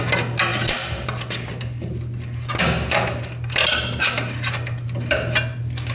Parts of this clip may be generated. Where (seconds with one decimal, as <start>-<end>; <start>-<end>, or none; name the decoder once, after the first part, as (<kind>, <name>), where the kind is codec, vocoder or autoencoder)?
none